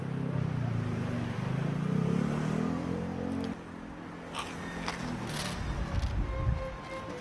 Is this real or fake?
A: real